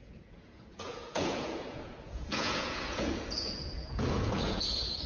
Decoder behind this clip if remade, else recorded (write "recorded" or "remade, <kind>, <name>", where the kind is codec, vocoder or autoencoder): remade, vocoder, Vocos